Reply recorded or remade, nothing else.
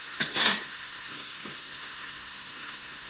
remade